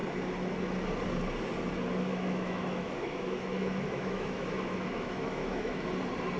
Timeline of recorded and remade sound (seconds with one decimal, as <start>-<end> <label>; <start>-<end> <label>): 0.0-2.1 recorded; 2.1-5.9 remade; 5.9-6.4 recorded